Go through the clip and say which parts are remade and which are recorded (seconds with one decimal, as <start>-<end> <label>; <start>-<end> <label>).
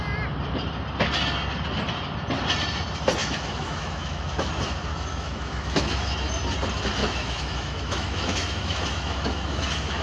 0.0-3.2 recorded; 3.2-4.5 remade; 4.5-4.9 recorded; 4.9-6.3 remade; 6.3-7.0 recorded; 7.0-10.0 remade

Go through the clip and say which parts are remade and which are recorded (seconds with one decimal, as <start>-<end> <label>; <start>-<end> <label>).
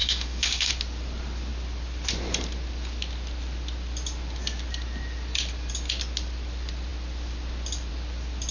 0.0-0.7 remade; 0.7-8.5 recorded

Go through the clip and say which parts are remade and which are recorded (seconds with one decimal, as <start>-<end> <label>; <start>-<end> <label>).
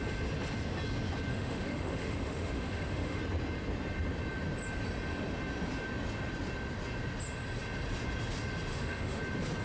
0.0-1.3 recorded; 1.3-3.2 remade; 3.2-8.7 recorded; 8.7-9.2 remade; 9.2-9.6 recorded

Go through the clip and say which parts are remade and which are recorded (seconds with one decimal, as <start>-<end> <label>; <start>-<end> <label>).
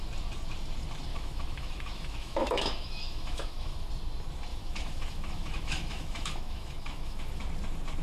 0.0-1.1 recorded; 1.1-3.9 remade; 3.9-4.5 recorded; 4.5-7.4 remade; 7.4-8.0 recorded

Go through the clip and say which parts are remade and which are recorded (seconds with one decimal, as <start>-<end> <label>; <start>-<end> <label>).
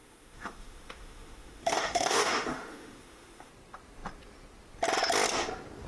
0.0-3.5 remade; 3.5-5.9 recorded